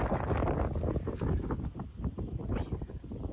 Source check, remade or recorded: recorded